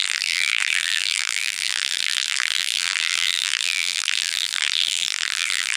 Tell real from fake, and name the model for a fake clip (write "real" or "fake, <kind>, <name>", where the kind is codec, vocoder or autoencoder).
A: fake, vocoder, BigVGAN v2